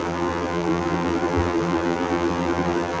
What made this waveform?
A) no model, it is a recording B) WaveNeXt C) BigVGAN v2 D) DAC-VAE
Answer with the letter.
C